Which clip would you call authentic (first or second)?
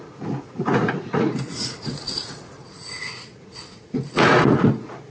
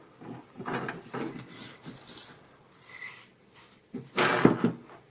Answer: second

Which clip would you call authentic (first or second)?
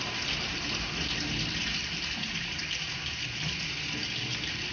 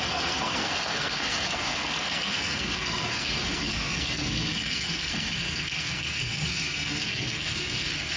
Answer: first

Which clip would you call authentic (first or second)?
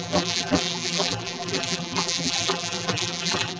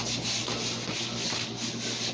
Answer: second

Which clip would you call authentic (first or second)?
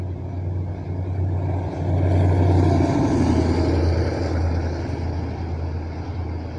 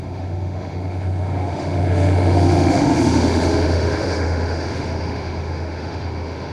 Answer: first